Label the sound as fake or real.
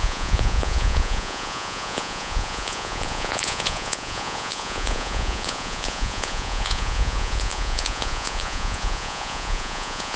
fake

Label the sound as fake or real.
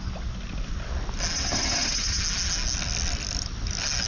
real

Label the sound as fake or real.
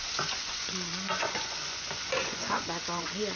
fake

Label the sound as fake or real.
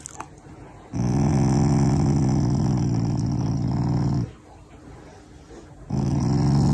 real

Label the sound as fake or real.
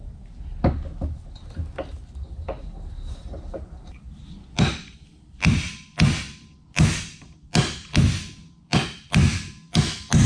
real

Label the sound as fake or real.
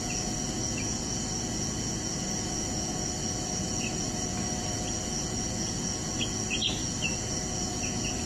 fake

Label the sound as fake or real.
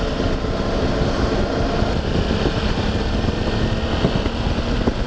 real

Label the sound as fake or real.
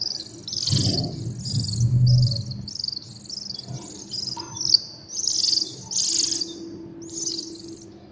real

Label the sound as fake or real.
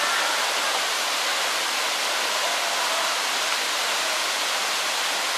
real